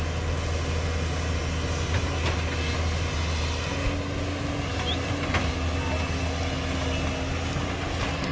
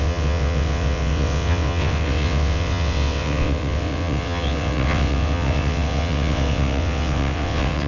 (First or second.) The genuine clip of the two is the first